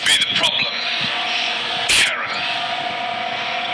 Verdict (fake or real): fake